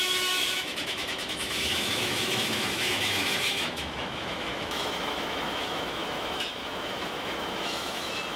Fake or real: fake